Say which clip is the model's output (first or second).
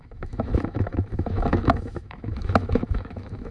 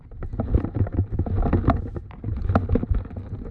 first